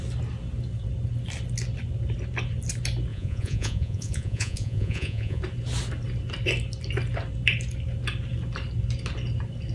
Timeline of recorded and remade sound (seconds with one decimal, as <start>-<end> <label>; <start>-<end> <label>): 0.0-3.1 recorded; 3.1-5.4 remade; 5.4-9.7 recorded